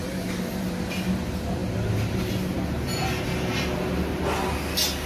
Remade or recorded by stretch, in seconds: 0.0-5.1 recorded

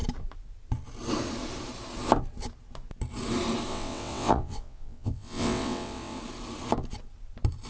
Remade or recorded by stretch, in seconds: 0.0-3.7 recorded; 3.7-6.2 remade; 6.2-7.7 recorded

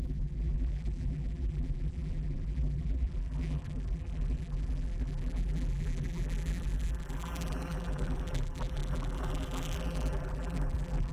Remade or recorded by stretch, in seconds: 0.0-11.1 remade

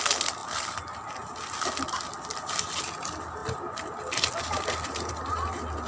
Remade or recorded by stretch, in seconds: 0.0-5.9 recorded